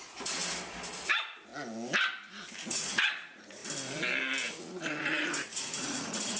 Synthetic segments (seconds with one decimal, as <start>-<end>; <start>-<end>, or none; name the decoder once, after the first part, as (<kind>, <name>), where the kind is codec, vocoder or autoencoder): 0.0-0.4 (vocoder, Vocos); 1.0-1.5; 2.7-3.6; 4.6-6.4